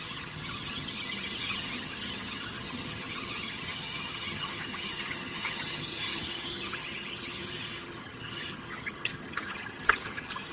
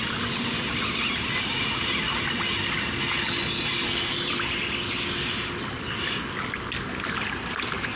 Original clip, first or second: second